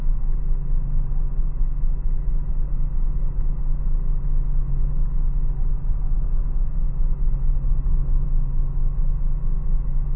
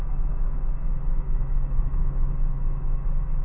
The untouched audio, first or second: first